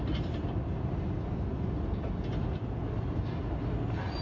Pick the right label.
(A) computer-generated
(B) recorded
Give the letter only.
B